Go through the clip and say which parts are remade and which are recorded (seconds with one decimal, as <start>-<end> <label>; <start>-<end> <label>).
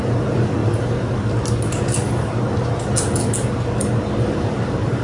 0.0-5.0 recorded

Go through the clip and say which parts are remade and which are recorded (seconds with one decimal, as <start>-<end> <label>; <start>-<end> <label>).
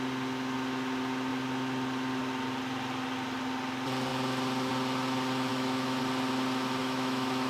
0.0-5.5 recorded; 5.5-6.0 remade; 6.0-6.8 recorded; 6.8-7.5 remade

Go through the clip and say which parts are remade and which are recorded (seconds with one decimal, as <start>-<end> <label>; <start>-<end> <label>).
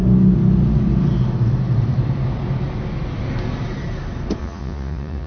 0.0-4.4 recorded; 4.4-5.3 remade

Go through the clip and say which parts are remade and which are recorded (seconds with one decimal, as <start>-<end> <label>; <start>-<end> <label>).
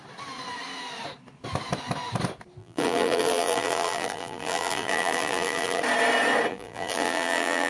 0.0-2.6 recorded; 2.6-5.8 remade; 5.8-6.5 recorded; 6.5-7.7 remade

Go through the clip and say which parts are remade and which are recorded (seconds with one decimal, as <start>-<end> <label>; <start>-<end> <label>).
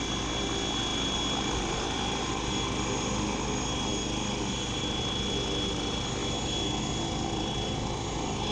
0.0-0.9 recorded; 0.9-2.4 remade; 2.4-8.5 recorded